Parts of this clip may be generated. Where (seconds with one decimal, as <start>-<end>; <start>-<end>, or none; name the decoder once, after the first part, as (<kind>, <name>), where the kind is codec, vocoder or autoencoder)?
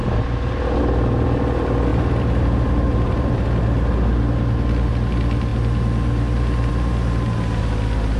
1.9-3.4 (vocoder, BigVGAN v2)